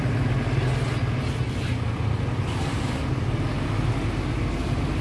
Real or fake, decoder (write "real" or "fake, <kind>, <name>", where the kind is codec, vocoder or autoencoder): real